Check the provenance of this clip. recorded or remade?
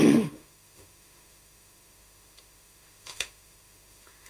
remade